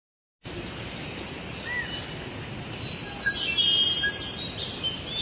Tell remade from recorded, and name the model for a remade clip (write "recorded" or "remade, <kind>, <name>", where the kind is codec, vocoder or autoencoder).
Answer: recorded